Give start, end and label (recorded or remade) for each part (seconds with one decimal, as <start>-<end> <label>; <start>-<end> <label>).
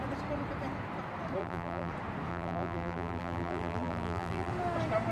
0.0-1.4 recorded; 1.4-1.9 remade; 1.9-2.3 recorded; 2.3-4.5 remade; 4.5-5.1 recorded